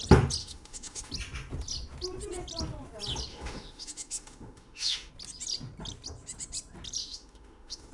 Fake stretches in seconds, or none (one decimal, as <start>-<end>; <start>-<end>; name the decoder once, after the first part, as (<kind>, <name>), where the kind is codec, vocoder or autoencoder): 0.4-1.1 (autoencoder, DAC-VAE); 3.3-5.1; 7.0-7.9